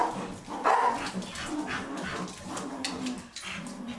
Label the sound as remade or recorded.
recorded